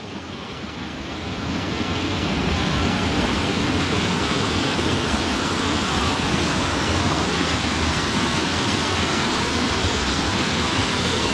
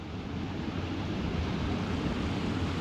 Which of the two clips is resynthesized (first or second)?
first